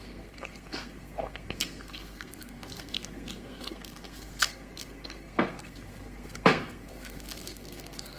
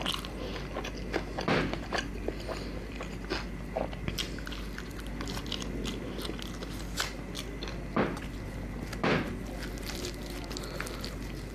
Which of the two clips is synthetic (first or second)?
first